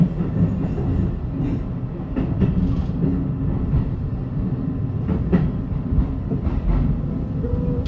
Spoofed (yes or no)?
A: no